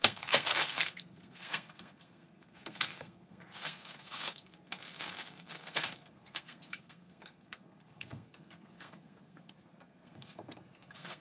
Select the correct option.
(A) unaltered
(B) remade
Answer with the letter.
B